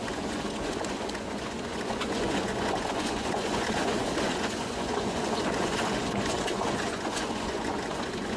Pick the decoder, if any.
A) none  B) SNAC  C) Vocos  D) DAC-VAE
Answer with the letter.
C